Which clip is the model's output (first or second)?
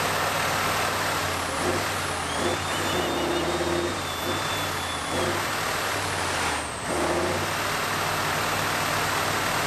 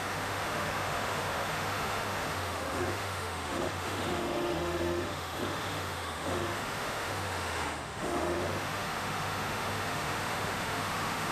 second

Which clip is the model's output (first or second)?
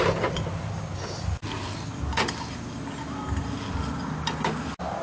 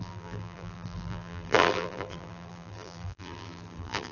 second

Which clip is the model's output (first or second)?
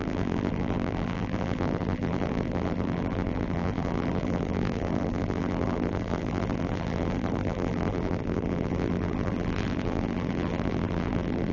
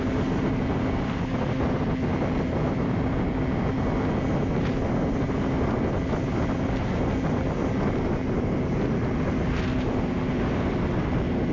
first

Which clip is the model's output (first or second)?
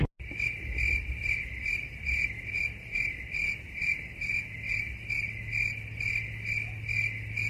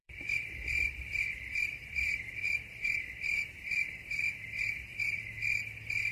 second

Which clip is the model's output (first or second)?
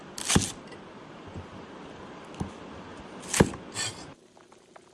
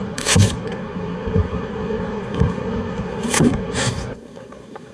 second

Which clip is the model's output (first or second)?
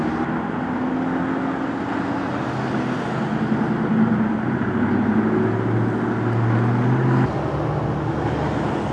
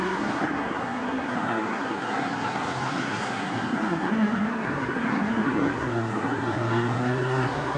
second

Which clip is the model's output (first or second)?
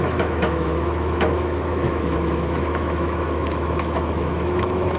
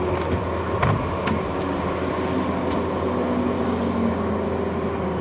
first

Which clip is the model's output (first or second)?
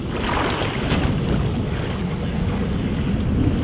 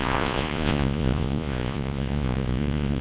second